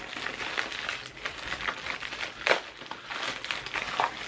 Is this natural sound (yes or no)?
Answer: yes